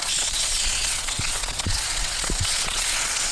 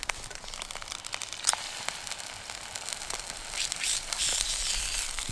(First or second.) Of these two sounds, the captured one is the second